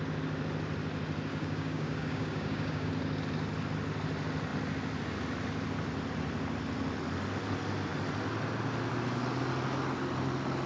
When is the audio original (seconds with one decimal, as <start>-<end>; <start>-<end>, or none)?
0.0-1.3; 2.9-10.7